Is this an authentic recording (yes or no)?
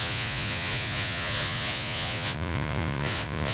no